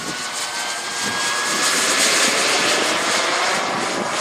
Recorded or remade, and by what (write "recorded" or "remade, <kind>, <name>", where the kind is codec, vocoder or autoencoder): recorded